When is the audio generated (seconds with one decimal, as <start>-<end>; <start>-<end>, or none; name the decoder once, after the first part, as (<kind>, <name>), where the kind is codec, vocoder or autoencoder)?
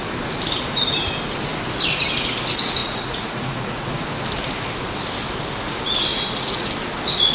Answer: 2.8-3.9 (vocoder, Vocos); 6.1-6.7